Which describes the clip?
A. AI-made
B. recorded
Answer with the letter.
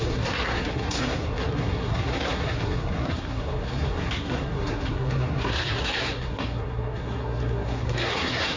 A